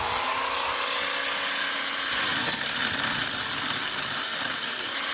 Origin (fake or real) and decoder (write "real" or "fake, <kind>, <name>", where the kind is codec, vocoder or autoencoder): real